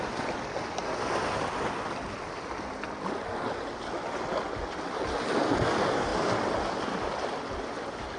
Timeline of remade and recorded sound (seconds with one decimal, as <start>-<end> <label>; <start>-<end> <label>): 0.0-8.2 recorded

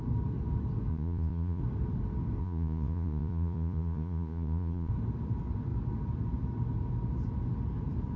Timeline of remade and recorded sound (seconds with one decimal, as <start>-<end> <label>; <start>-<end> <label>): 0.0-0.9 recorded; 0.9-1.6 remade; 1.6-2.4 recorded; 2.4-4.9 remade; 4.9-8.2 recorded

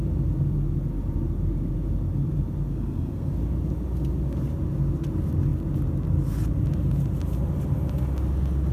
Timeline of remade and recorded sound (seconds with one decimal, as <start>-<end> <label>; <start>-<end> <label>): 0.0-2.7 recorded; 2.7-3.3 remade; 3.3-8.7 recorded

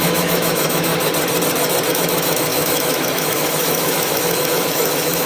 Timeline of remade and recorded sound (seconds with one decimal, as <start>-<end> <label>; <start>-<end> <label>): 0.0-0.9 remade; 0.9-1.9 recorded; 1.9-5.3 remade

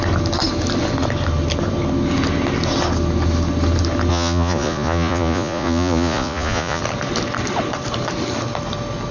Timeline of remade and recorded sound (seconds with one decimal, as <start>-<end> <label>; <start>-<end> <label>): 0.0-4.1 recorded; 4.1-6.8 remade; 6.8-9.1 recorded